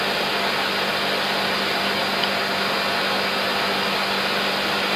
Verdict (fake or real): real